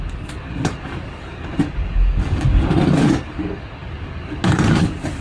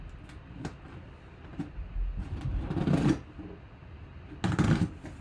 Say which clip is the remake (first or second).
first